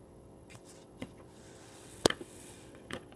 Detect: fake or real fake